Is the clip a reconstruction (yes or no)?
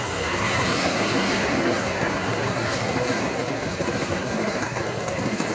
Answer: yes